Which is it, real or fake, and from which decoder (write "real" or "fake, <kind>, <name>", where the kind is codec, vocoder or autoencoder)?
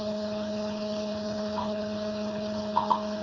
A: fake, codec, HILCodec